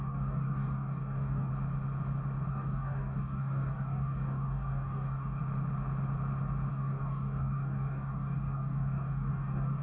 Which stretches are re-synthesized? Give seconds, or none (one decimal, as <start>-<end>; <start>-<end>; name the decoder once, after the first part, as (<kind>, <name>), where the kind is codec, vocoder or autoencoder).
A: 0.0-1.5 (codec, DAC); 2.5-5.4; 6.7-9.8

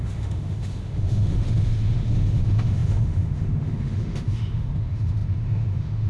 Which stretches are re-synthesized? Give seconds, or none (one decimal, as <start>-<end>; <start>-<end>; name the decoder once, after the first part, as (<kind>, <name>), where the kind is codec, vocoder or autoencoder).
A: 0.0-6.1 (autoencoder, DAC-VAE)

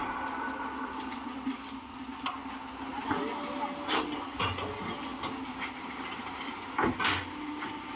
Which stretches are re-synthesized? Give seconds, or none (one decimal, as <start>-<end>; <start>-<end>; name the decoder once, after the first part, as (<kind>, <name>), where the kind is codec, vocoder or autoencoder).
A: none

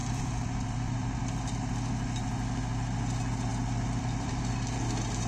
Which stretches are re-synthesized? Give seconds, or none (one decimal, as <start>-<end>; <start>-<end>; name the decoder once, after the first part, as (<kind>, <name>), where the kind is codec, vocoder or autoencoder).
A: 0.0-1.2 (vocoder, BigVGAN v2); 3.5-4.3

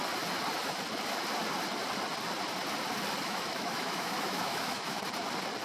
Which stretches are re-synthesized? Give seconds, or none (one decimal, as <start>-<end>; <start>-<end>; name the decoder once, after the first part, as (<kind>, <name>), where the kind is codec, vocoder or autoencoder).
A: 3.2-5.0 (autoencoder, DAC-VAE)

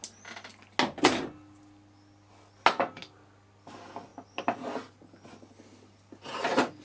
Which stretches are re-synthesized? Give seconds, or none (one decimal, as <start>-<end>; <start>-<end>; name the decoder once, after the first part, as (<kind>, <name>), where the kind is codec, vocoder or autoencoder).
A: none

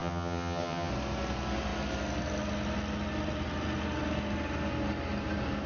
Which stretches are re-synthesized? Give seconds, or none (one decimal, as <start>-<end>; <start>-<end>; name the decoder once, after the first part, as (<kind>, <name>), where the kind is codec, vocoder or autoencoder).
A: 0.0-0.9 (vocoder, HiFi-GAN)